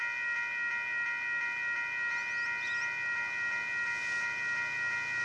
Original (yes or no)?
yes